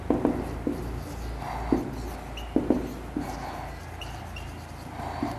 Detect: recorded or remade recorded